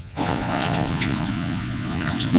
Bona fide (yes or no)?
no